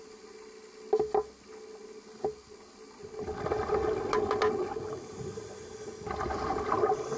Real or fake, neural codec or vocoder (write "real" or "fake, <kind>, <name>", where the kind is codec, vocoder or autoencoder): real